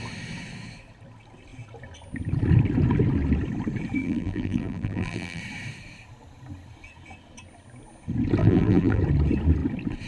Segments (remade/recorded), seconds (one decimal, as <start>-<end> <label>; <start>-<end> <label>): 0.0-4.0 recorded; 4.0-5.4 remade; 5.4-8.4 recorded; 8.4-9.0 remade; 9.0-10.1 recorded